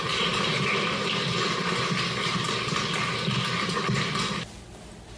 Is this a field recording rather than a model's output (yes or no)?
yes